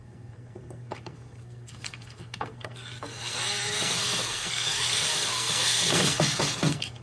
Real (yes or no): no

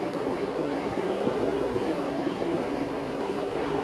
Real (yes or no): no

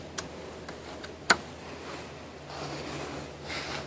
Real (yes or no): yes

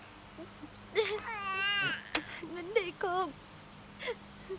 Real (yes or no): yes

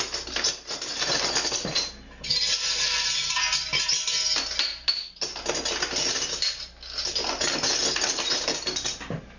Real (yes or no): yes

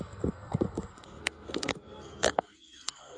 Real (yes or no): no